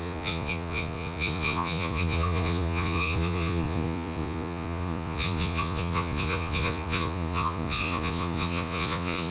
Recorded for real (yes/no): no